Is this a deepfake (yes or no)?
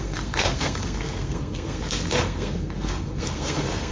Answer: yes